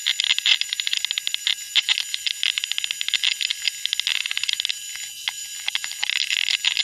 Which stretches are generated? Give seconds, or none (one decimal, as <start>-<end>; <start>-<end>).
0.5-2.6; 3.5-6.8